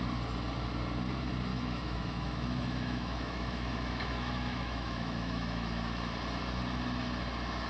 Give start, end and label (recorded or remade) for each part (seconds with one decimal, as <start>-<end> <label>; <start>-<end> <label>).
0.0-1.5 recorded; 1.5-6.1 remade; 6.1-7.7 recorded

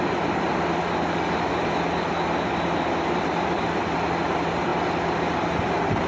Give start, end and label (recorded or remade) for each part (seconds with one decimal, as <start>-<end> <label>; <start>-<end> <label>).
0.0-0.5 remade; 0.5-2.9 recorded; 2.9-4.7 remade; 4.7-6.1 recorded

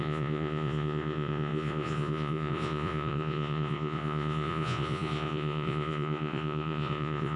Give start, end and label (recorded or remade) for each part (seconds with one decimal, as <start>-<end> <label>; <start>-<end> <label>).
0.0-7.4 remade